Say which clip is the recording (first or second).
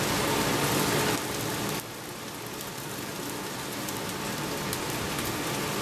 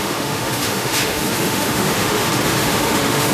first